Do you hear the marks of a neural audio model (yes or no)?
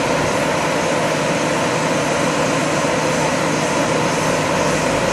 no